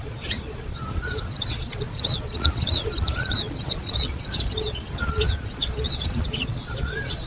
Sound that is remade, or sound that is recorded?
remade